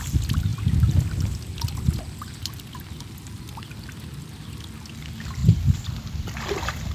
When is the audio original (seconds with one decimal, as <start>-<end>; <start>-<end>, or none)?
0.0-5.4